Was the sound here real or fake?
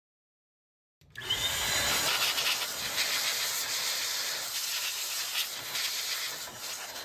real